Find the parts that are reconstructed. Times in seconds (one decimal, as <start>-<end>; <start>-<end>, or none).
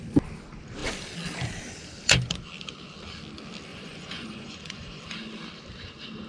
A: 3.7-5.0